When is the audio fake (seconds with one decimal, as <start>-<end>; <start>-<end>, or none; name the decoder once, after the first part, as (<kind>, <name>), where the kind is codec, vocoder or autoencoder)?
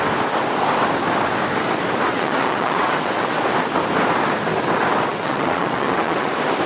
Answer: 2.1-3.4 (vocoder, WaveNeXt); 5.1-6.3